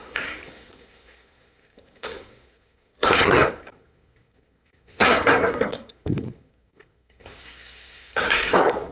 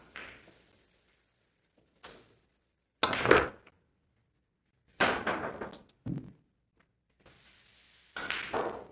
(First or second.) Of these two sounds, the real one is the second